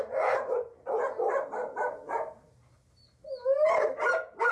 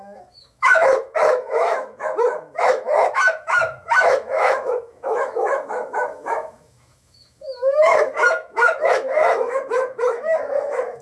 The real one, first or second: first